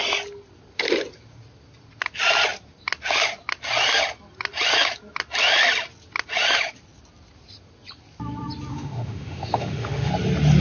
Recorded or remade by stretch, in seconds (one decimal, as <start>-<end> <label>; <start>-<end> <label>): 0.0-8.7 recorded; 8.7-10.1 remade; 10.1-10.6 recorded